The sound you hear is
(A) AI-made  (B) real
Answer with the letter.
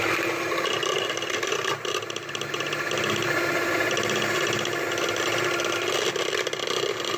B